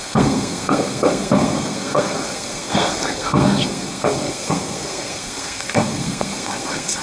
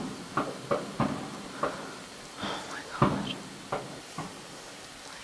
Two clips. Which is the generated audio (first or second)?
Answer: first